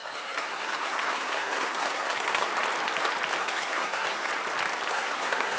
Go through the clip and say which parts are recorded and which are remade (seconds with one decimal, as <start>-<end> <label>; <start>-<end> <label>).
0.0-2.5 remade; 2.5-3.4 recorded; 3.4-4.3 remade; 4.3-4.9 recorded; 4.9-5.6 remade

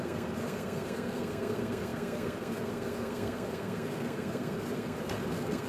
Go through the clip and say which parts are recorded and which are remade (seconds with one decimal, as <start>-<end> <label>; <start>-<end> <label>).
0.0-5.7 remade

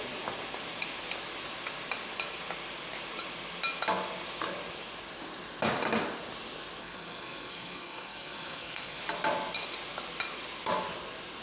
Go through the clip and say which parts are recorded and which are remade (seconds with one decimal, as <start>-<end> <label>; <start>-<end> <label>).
0.0-6.8 recorded; 6.8-9.0 remade; 9.0-11.4 recorded

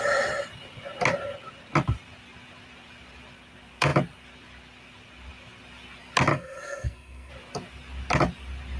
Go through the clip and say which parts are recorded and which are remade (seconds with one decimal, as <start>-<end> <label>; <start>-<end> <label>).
0.0-6.3 recorded; 6.3-7.3 remade; 7.3-8.8 recorded

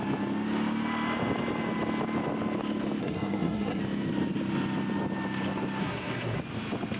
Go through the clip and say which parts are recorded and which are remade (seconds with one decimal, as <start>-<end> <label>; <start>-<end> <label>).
0.0-3.0 recorded; 3.0-3.8 remade; 3.8-5.8 recorded; 5.8-6.4 remade; 6.4-7.0 recorded

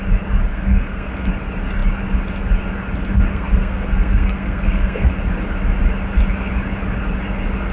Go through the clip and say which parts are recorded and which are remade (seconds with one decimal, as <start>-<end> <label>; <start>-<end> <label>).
0.0-0.5 recorded; 0.5-1.3 remade; 1.3-3.3 recorded; 3.3-5.1 remade; 5.1-7.7 recorded